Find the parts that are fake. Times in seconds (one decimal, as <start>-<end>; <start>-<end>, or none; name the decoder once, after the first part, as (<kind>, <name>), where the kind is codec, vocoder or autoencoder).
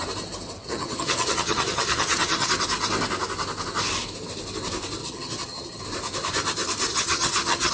0.6-2.5 (vocoder, HiFi-GAN); 5.0-5.8; 6.9-7.7